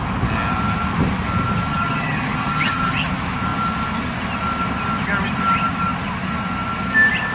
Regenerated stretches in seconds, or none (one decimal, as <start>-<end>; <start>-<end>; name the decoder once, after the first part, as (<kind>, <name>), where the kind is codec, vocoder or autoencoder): 1.7-3.1 (vocoder, HiFi-GAN)

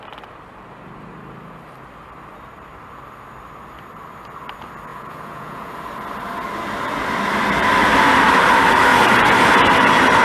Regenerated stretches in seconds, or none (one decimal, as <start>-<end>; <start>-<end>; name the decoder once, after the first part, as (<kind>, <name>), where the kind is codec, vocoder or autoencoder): 4.9-5.7 (vocoder, Vocos)

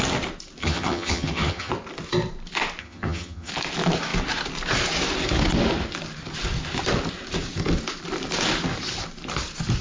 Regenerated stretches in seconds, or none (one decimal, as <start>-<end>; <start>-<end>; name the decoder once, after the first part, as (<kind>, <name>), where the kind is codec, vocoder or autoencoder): 0.6-1.7 (vocoder, HiFi-GAN); 2.8-3.5

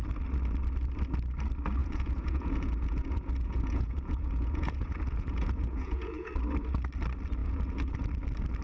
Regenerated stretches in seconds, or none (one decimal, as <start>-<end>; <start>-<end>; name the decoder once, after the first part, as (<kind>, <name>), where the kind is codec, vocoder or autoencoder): 1.8-6.3 (vocoder, Vocos); 7.4-7.9